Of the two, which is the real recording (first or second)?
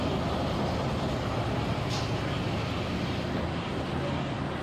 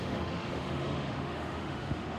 first